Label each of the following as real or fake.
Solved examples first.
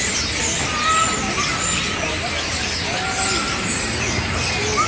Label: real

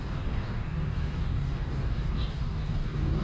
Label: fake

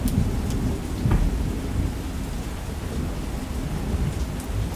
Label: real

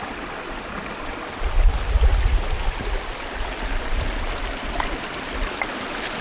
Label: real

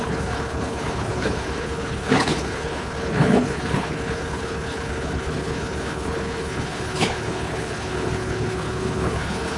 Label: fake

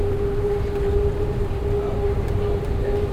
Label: real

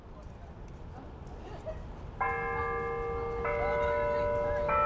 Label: real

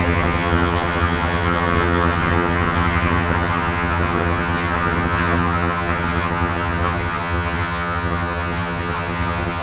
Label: fake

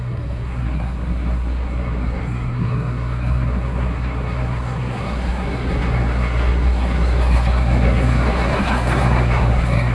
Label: fake